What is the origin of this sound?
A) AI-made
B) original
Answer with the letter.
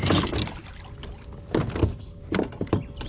B